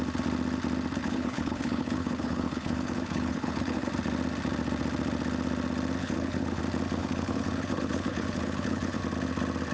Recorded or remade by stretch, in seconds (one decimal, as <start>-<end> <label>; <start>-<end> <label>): 0.0-1.0 recorded; 1.0-3.9 remade; 3.9-6.0 recorded; 6.0-6.6 remade; 6.6-7.0 recorded; 7.0-9.0 remade; 9.0-9.7 recorded